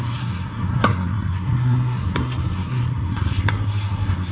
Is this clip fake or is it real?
fake